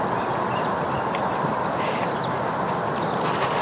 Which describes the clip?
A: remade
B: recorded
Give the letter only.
B